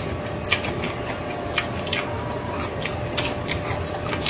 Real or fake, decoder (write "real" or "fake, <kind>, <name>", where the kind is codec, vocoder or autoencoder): real